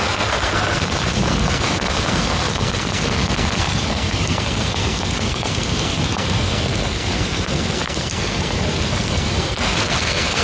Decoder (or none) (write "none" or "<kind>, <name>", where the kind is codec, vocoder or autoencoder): codec, SNAC